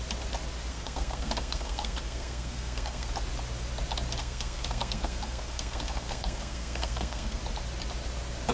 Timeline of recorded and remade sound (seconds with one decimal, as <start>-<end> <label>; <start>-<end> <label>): 0.0-0.7 recorded; 0.7-3.1 remade; 3.1-4.2 recorded; 4.2-7.4 remade; 7.4-8.5 recorded